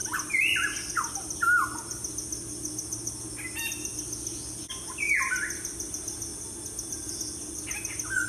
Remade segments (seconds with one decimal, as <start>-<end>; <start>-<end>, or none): none